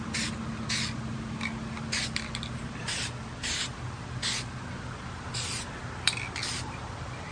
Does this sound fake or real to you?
real